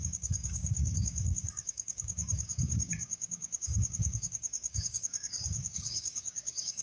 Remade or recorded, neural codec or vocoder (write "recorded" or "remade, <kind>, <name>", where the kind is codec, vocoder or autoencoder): remade, codec, DAC